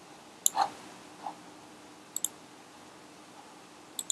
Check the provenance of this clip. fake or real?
real